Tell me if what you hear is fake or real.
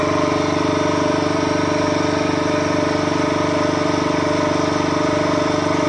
real